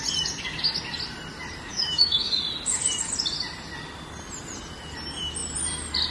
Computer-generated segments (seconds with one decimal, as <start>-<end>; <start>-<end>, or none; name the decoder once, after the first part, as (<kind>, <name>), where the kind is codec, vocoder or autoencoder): 1.7-2.4 (autoencoder, DAC-VAE)